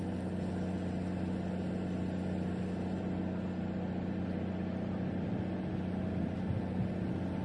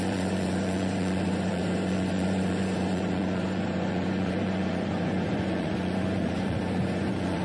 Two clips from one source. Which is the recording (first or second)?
first